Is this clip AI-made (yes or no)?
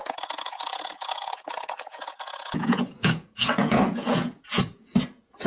yes